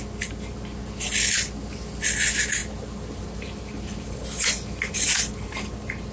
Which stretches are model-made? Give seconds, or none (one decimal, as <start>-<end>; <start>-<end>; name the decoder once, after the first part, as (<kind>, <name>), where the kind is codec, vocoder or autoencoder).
none